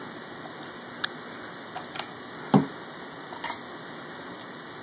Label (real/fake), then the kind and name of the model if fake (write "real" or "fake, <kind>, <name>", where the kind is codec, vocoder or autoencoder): real